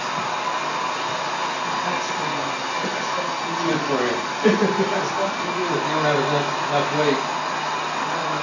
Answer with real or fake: real